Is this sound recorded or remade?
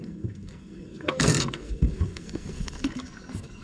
remade